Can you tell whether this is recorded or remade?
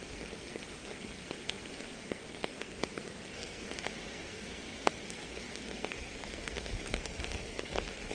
remade